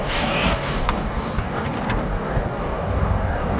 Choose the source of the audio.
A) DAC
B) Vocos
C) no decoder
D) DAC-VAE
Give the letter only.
A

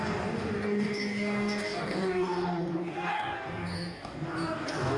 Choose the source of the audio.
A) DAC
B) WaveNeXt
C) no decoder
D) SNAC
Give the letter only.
A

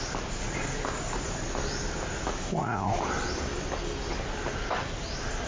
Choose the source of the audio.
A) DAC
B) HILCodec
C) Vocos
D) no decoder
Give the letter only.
D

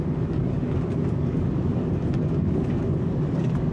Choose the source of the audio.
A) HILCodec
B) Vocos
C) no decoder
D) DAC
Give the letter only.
D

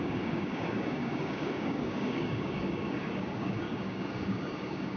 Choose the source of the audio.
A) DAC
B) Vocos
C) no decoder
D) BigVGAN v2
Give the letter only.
A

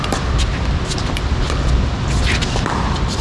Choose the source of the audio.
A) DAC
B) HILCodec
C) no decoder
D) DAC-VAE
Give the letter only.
C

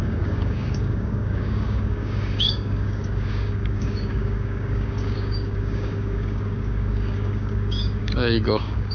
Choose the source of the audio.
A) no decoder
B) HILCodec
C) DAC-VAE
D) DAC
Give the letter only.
D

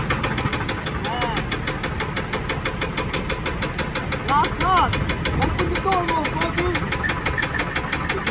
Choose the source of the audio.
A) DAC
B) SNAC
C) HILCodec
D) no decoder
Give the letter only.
D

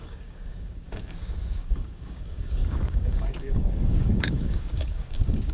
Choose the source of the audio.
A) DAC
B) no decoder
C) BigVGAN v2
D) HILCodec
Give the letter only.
A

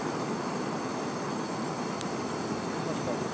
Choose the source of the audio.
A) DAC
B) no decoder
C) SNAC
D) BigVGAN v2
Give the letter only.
B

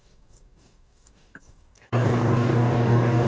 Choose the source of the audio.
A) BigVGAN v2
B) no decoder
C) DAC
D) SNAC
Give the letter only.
C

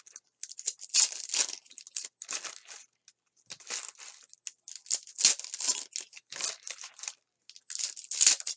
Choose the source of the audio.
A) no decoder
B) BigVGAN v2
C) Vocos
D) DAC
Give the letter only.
A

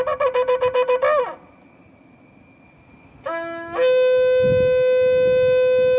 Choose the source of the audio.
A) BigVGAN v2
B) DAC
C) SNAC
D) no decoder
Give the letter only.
D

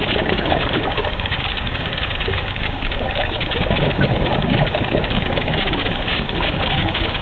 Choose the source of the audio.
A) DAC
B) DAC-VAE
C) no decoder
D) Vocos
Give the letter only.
A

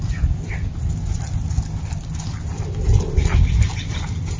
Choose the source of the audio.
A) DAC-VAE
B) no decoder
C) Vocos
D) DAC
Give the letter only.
B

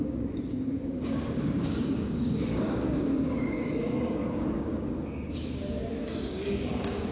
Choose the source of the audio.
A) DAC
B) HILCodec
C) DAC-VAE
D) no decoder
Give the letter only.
A